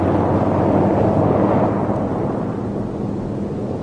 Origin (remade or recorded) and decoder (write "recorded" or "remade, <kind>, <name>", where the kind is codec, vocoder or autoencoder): recorded